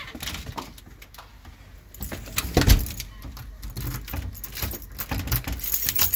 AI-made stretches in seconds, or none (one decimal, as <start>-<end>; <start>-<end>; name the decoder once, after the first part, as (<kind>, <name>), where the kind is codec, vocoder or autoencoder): none